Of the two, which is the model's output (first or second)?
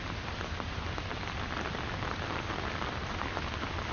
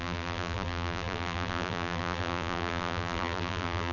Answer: second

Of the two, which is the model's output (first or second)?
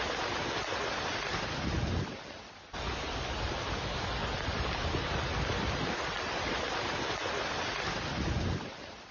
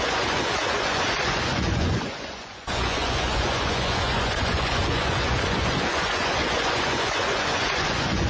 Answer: second